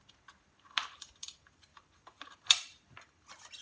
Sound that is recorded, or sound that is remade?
remade